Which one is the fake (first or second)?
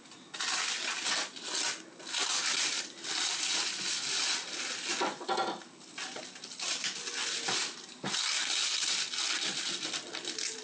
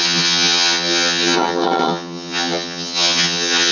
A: second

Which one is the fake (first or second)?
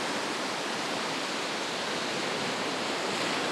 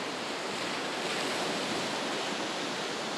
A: first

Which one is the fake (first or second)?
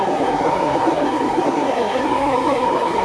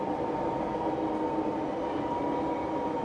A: first